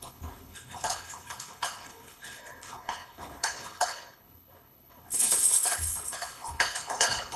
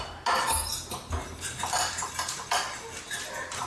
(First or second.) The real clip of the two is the second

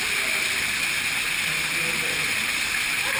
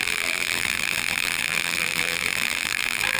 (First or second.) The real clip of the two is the first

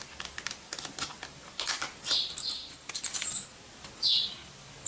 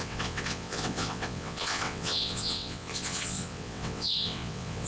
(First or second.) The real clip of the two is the first